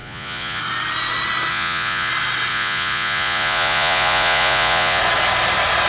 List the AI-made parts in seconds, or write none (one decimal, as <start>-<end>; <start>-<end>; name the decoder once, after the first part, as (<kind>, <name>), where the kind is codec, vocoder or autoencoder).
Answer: 0.0-0.6 (vocoder, Vocos); 1.5-2.1; 2.5-5.0